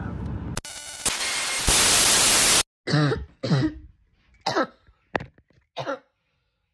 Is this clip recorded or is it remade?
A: recorded